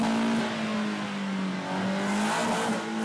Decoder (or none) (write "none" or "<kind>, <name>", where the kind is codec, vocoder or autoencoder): none